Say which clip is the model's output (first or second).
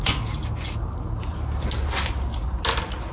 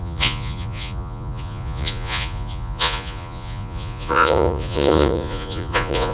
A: second